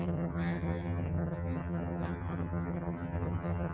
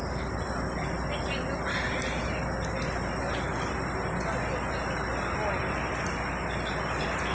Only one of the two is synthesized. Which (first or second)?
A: first